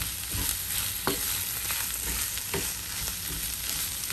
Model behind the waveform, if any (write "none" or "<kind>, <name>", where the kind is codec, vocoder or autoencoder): none